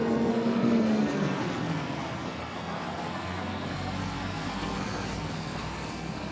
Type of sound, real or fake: fake